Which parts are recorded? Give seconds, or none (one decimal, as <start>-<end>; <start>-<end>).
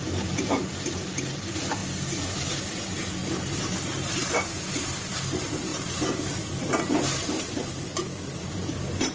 1.8-2.8; 3.2-3.9